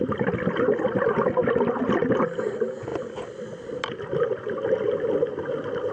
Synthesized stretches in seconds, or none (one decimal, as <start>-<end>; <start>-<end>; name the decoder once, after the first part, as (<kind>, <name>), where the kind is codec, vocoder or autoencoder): none

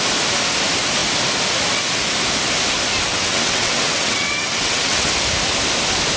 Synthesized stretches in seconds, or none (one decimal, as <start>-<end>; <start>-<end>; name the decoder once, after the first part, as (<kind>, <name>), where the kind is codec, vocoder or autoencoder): 3.1-5.1 (vocoder, WaveNeXt)

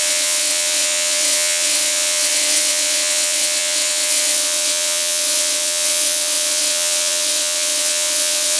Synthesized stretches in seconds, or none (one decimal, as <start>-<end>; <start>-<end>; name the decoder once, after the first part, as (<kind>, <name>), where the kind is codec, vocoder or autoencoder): 0.0-8.6 (vocoder, WaveNeXt)

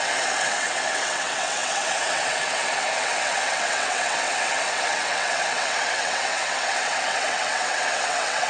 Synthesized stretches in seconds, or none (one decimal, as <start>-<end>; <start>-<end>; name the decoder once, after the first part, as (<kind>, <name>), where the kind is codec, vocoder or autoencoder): 0.0-8.5 (vocoder, WaveNeXt)

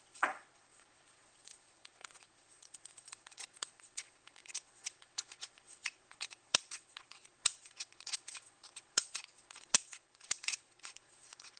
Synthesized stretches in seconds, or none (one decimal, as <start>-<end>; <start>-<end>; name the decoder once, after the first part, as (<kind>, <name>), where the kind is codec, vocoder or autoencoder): 0.0-11.6 (vocoder, WaveNeXt)